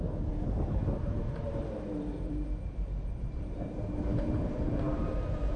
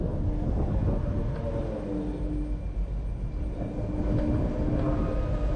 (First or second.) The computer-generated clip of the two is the first